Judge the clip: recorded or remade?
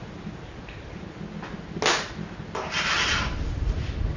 recorded